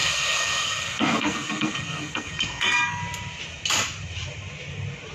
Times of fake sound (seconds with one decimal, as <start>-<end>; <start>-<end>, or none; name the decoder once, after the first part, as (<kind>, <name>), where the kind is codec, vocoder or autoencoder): 0.0-3.0 (codec, SNAC)